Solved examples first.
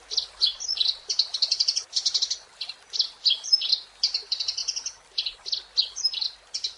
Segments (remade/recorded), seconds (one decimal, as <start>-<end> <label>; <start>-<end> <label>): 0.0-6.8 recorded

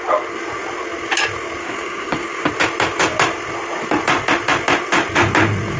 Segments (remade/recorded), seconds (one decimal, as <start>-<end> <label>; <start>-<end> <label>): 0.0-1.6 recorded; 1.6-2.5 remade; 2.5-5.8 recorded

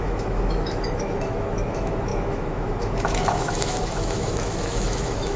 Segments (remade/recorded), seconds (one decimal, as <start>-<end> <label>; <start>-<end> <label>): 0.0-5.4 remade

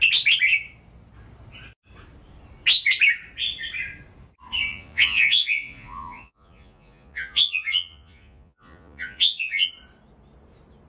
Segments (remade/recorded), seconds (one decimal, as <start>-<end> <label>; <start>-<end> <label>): 0.0-4.7 recorded; 4.7-9.7 remade; 9.7-10.9 recorded

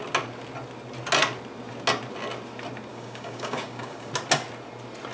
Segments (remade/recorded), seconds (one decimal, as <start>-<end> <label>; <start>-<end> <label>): 0.0-2.9 recorded; 2.9-4.1 remade; 4.1-5.1 recorded

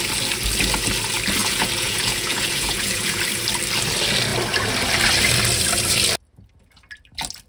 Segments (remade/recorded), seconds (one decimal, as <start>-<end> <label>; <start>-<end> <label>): 0.0-1.4 recorded; 1.4-3.2 remade; 3.2-7.5 recorded

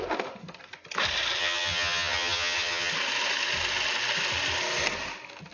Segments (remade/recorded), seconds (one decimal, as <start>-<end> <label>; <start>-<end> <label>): 0.0-1.4 recorded; 1.4-2.9 remade; 2.9-5.5 recorded